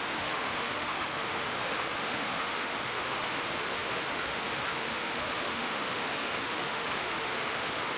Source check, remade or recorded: remade